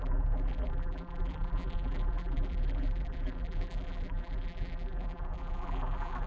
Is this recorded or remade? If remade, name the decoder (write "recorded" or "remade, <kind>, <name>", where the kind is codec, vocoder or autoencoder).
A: remade, vocoder, BigVGAN v2